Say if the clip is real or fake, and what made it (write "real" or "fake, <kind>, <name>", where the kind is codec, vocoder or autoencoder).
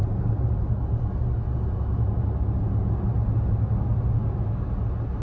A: real